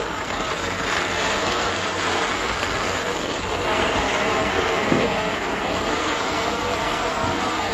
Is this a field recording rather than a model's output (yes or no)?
no